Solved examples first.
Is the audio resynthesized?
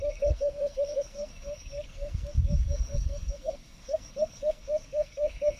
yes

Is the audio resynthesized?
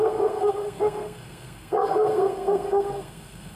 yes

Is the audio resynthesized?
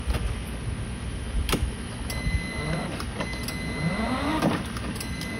no